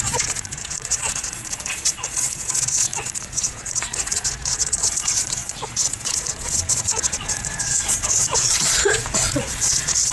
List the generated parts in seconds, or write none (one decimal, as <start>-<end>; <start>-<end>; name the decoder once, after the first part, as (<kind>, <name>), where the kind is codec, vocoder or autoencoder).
0.0-10.1 (vocoder, Vocos)